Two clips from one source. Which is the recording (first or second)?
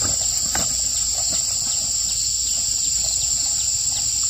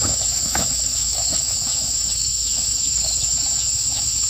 first